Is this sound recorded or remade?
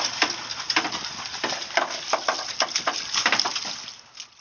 recorded